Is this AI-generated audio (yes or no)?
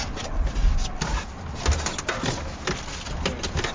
no